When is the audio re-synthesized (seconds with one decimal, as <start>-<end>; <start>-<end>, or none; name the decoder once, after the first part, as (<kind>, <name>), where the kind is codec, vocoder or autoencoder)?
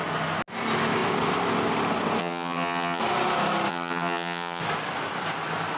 2.2-3.0 (vocoder, HiFi-GAN); 3.7-4.6